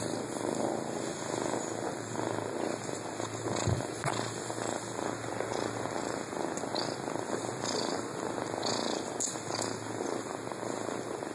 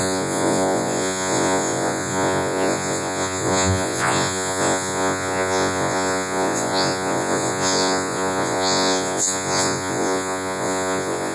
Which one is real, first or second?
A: first